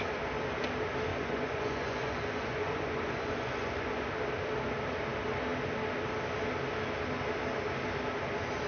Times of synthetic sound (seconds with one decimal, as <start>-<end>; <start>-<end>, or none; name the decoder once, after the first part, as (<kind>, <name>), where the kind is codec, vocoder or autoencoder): 1.1-4.1 (vocoder, Vocos)